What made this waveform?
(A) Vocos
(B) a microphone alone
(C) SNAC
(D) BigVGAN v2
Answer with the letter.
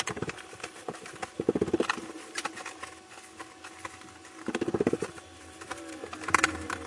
D